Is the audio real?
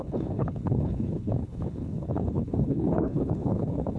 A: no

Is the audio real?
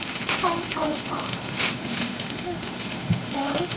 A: no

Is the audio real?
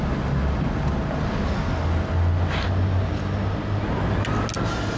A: yes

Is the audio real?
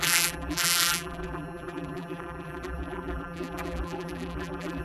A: no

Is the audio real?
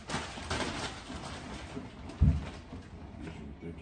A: yes